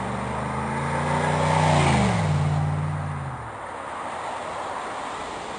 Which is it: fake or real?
real